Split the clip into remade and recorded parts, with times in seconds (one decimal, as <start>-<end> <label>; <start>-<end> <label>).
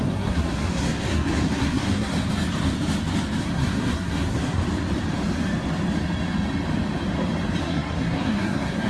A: 0.0-2.1 remade; 2.1-3.4 recorded; 3.4-4.6 remade; 4.6-7.6 recorded; 7.6-8.9 remade